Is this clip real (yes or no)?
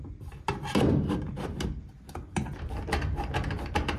yes